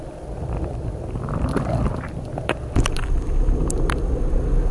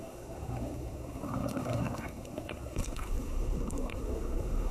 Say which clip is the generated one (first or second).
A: second